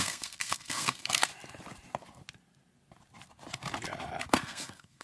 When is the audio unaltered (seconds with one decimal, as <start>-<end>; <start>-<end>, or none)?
1.3-4.3